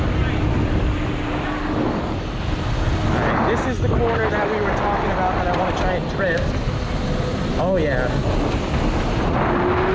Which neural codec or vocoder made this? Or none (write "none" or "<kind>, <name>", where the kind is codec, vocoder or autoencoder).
none